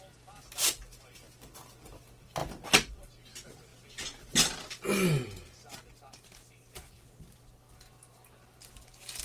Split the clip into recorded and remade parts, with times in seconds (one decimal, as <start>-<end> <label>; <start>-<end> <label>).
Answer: 0.0-9.2 recorded